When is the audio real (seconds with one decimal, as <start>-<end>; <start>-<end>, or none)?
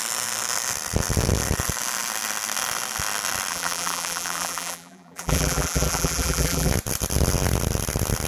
0.0-3.5; 6.7-8.3